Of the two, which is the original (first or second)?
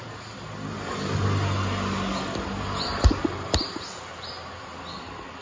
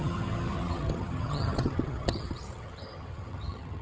first